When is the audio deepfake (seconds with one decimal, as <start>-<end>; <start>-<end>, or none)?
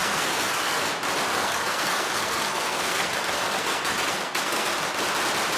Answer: 0.0-0.9; 1.3-4.7